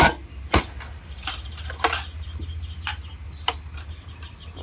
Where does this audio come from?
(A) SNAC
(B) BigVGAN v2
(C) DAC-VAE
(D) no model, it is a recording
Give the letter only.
D